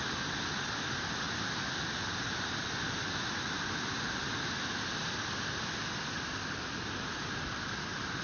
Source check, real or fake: real